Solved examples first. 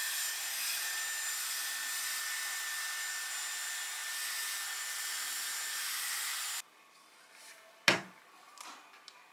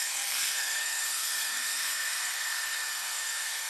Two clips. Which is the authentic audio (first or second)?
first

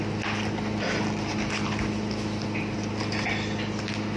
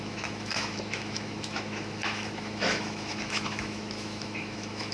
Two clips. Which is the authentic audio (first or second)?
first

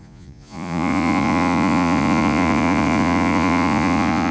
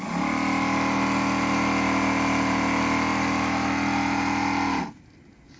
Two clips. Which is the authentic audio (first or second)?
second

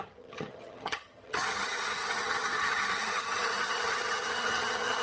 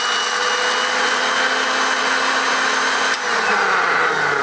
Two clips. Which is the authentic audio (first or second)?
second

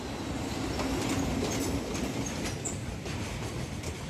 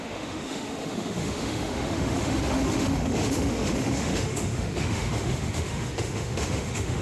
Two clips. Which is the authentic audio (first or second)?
first